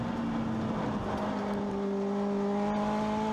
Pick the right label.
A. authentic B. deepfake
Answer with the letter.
A